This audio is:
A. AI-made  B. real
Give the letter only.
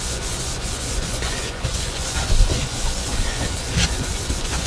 A